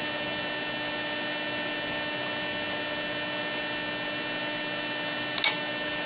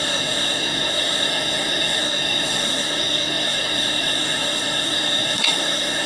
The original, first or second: first